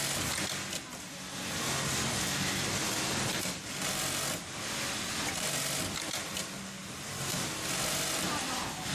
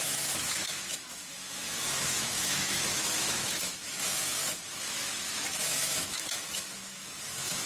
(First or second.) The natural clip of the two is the first